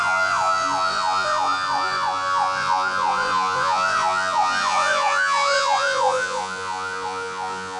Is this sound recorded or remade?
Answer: remade